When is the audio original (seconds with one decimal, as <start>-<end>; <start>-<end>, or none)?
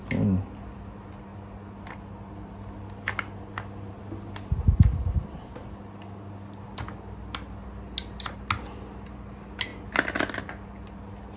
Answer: 0.0-11.4